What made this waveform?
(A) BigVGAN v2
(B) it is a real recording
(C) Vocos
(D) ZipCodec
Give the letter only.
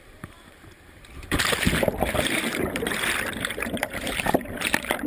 A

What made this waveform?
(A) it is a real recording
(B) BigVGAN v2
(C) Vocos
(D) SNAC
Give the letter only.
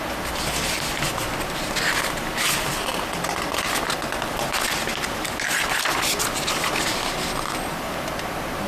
A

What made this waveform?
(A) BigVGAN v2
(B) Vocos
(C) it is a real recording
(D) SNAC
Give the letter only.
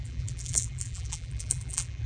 A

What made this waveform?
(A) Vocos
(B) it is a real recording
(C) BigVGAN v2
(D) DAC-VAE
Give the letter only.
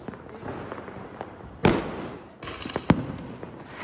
B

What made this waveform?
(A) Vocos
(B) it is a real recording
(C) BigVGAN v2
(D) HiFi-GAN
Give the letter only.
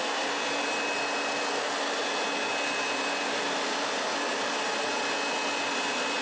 B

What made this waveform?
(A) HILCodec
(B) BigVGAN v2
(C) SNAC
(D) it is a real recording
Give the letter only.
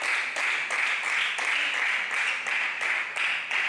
D